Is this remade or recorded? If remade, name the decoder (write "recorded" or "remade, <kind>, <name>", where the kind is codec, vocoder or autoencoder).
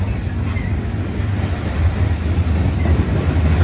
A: recorded